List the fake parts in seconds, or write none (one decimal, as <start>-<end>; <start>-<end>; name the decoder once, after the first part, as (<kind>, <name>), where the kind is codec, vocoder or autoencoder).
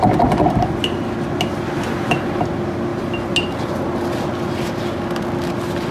none